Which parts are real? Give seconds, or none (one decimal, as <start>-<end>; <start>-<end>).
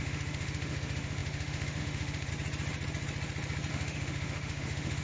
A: 2.3-3.7